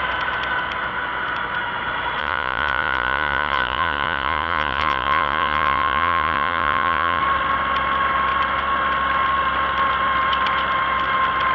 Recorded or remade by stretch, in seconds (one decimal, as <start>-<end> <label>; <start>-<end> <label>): 0.0-2.2 recorded; 2.2-7.2 remade; 7.2-11.5 recorded